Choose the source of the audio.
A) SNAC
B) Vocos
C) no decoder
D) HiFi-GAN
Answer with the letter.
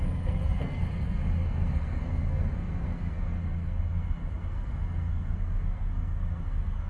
A